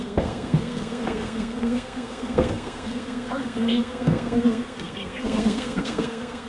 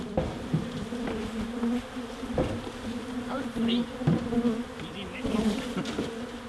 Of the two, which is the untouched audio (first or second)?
second